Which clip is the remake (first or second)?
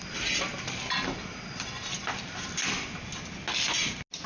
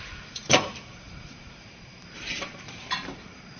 second